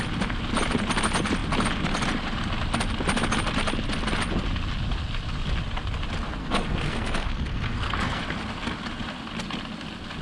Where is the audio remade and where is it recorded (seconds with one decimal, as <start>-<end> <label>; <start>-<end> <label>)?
0.0-6.4 recorded; 6.4-8.2 remade; 8.2-10.2 recorded